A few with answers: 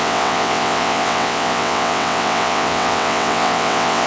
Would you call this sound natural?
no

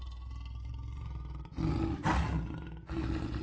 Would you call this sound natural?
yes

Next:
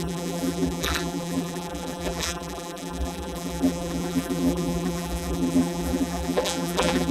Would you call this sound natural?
no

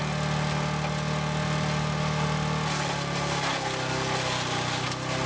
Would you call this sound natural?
yes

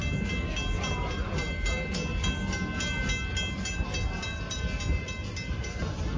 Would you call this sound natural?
yes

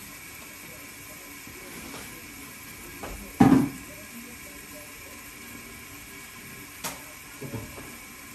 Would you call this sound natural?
yes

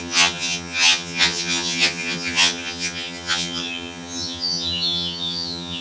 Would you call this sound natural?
no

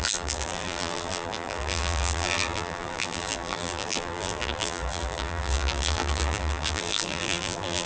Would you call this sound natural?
no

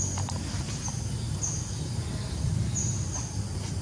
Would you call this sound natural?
yes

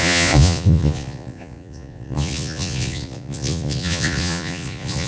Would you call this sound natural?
no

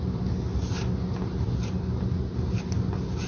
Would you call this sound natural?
yes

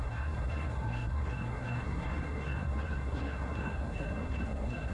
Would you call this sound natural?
no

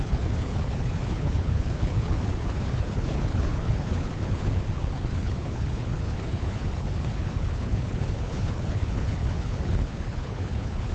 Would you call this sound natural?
no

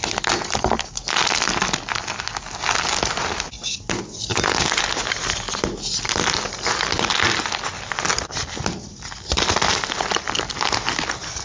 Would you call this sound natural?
yes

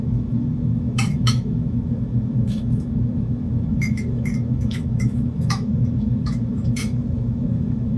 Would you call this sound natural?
no